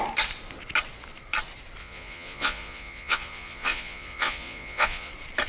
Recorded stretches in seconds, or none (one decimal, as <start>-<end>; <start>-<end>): 0.0-1.8; 5.1-5.5